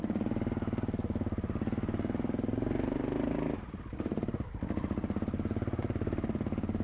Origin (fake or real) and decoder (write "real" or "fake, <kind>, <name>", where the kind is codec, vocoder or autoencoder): real